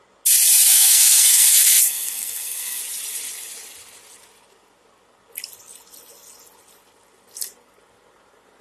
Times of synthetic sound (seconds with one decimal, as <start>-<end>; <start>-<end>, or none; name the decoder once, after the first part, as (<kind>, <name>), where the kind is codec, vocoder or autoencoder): 0.7-2.8 (codec, SNAC)